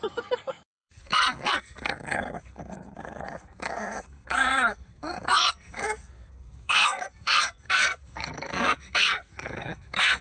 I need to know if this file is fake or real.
fake